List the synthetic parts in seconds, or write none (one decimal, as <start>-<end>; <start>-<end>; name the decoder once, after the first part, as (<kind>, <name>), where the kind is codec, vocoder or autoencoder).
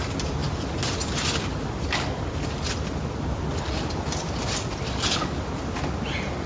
none